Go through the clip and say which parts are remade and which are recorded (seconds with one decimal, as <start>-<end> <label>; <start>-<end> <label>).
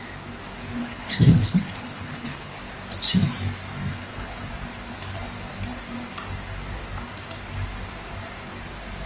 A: 0.0-0.8 recorded; 0.8-2.6 remade; 2.6-3.9 recorded; 3.9-4.5 remade; 4.5-9.1 recorded